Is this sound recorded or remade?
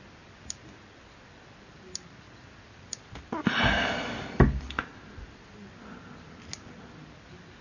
recorded